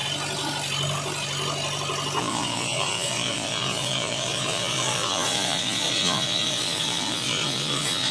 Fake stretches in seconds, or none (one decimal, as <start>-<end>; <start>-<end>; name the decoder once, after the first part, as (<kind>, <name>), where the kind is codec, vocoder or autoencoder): 2.2-8.1 (vocoder, Vocos)

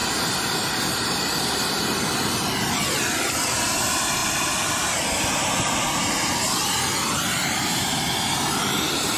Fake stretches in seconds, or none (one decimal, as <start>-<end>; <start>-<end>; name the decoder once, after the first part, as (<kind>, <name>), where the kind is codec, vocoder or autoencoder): none

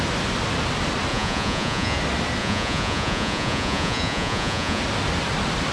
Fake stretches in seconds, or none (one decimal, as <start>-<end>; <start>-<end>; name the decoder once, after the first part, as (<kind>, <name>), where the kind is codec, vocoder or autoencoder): 1.1-2.0 (vocoder, Vocos); 2.4-4.8